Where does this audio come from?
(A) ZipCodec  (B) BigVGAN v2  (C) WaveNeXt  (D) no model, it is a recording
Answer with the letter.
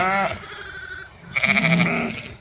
D